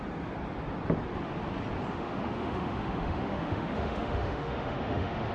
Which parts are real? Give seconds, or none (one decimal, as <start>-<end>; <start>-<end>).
0.0-1.9